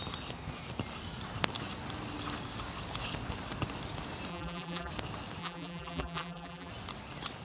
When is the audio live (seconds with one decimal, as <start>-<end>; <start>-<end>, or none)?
0.0-4.3; 4.9-5.4; 6.7-7.4